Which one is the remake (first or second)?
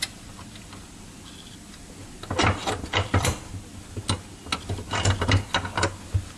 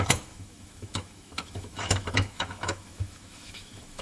second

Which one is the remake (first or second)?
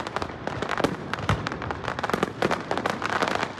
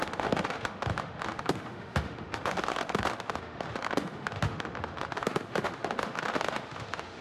second